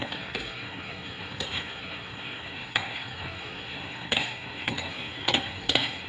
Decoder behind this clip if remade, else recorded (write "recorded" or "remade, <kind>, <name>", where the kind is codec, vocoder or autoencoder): remade, codec, SNAC